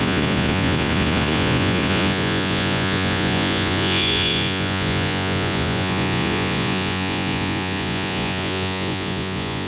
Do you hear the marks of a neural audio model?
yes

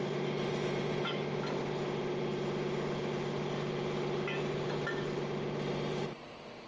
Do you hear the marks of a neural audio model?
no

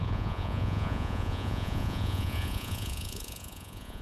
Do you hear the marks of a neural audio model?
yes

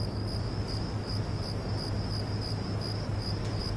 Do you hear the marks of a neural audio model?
no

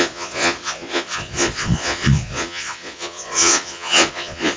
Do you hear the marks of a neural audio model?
yes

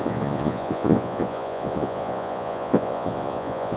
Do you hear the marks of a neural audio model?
yes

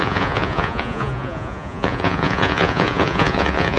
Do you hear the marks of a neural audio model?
yes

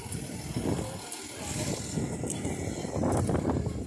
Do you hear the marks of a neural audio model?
no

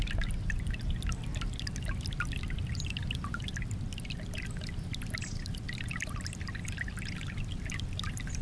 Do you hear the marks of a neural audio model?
no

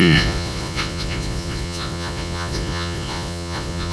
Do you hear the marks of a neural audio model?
yes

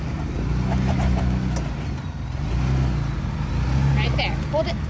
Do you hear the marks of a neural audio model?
no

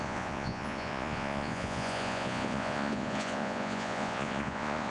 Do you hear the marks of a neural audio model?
yes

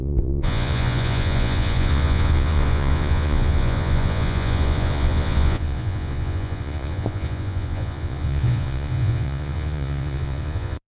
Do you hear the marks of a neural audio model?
yes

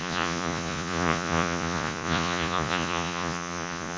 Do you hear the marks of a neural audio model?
yes